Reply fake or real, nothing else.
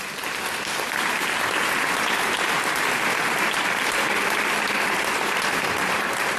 real